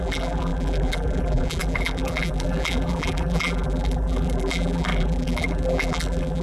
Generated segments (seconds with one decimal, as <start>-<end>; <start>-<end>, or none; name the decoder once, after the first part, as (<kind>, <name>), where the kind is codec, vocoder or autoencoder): 0.0-6.4 (vocoder, BigVGAN v2)